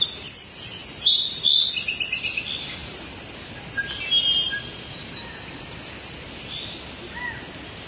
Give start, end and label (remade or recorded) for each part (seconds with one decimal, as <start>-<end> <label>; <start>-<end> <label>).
0.0-7.9 recorded